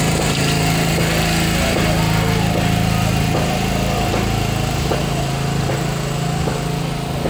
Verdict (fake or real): real